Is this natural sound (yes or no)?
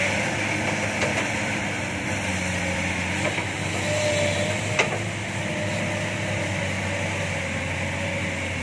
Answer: yes